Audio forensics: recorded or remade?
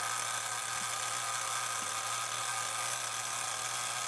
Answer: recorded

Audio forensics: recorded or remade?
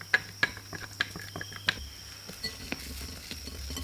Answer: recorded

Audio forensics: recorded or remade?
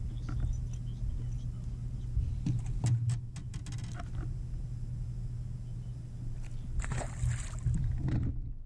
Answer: recorded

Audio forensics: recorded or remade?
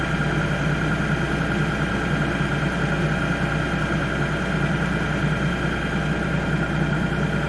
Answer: recorded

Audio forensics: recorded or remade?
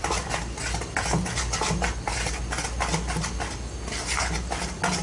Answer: recorded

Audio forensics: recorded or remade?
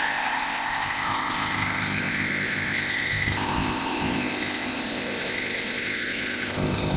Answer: remade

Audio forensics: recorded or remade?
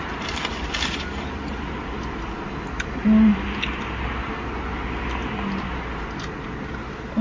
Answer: recorded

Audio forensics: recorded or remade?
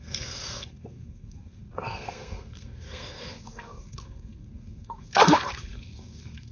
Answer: remade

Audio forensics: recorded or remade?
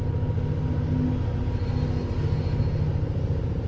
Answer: recorded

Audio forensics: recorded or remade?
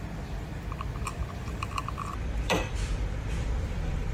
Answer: remade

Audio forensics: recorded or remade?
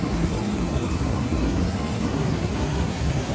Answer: remade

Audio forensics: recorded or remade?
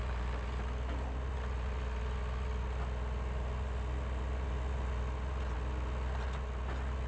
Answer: recorded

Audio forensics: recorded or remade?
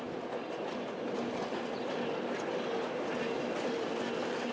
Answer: recorded